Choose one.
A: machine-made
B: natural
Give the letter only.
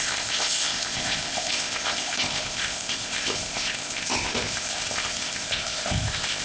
A